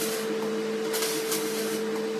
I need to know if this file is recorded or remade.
recorded